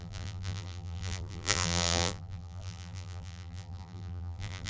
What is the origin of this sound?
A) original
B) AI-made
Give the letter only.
B